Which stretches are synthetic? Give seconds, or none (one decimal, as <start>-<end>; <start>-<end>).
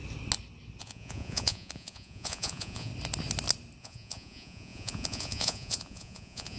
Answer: 0.8-2.9; 3.8-6.6